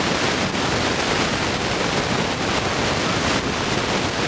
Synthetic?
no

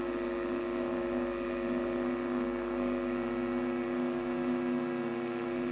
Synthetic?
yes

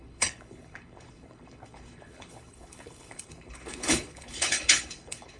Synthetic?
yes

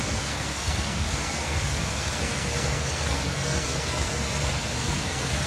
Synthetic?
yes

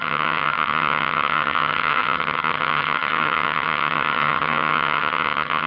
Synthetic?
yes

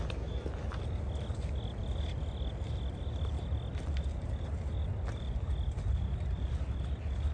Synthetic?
no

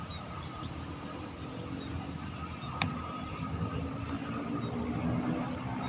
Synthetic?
no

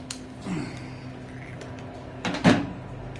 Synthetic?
no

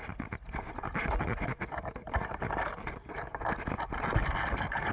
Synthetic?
no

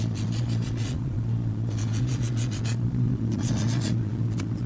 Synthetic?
yes